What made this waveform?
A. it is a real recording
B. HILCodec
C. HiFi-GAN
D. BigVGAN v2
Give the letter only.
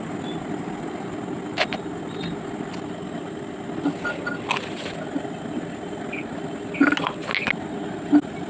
A